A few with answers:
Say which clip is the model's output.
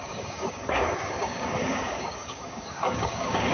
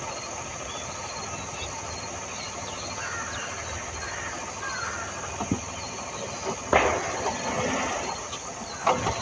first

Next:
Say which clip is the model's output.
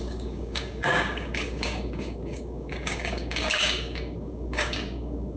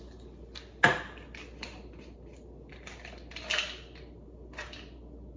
first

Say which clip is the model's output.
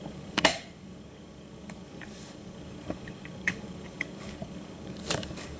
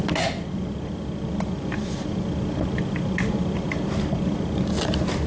first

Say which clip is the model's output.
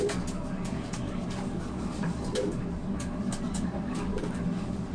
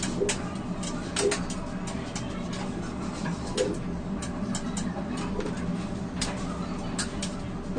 first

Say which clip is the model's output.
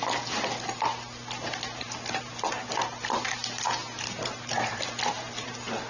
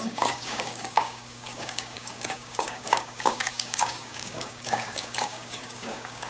second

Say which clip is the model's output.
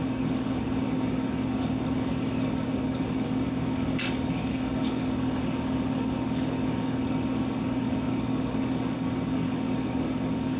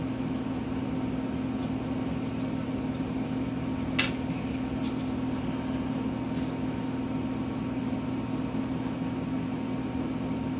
first